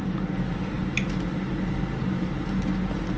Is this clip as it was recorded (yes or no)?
yes